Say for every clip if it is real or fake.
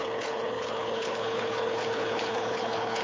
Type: fake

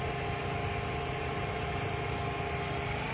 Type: real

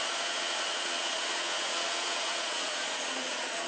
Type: fake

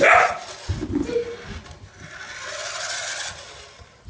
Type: real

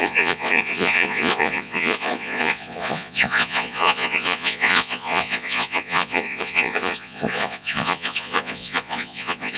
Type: fake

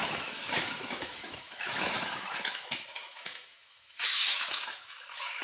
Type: fake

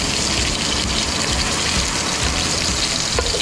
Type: real